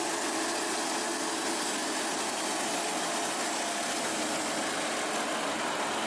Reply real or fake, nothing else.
real